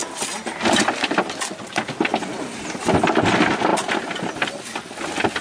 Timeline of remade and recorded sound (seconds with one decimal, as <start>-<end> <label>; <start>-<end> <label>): 0.0-5.4 recorded